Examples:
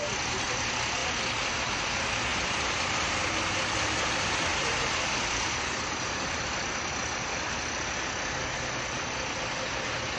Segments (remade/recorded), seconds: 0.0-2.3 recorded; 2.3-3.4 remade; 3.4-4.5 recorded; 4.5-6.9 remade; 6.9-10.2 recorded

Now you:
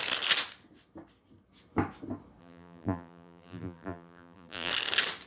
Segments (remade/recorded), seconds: 0.0-2.4 recorded; 2.4-4.7 remade; 4.7-5.3 recorded

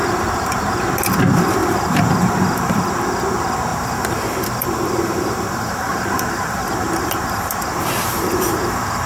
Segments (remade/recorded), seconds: 0.0-1.6 recorded; 1.6-2.8 remade; 2.8-3.7 recorded; 3.7-9.1 remade

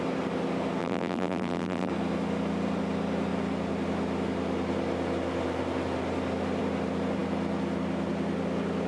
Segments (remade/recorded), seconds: 0.0-0.8 recorded; 0.8-1.9 remade; 1.9-8.9 recorded